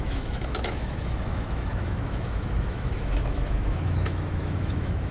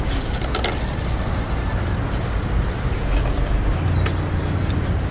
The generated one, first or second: first